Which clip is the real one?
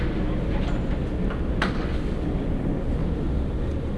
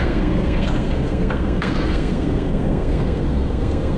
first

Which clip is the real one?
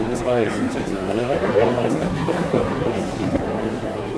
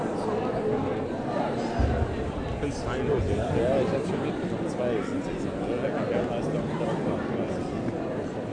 second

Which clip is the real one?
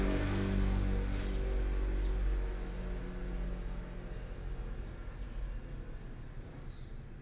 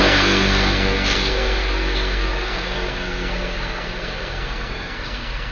first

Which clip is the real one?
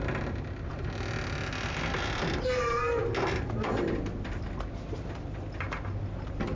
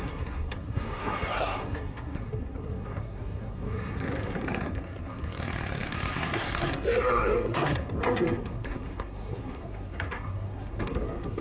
first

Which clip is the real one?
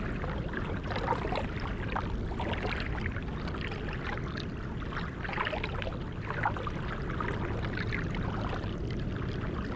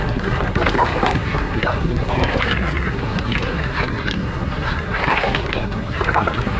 first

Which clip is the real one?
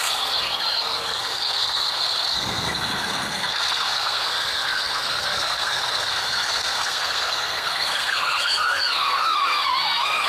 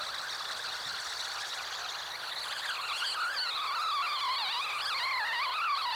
second